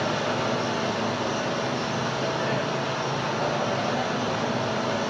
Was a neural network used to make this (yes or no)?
no